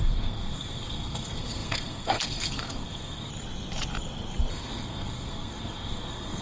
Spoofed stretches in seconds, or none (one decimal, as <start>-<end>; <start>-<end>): 0.0-3.3; 4.5-6.4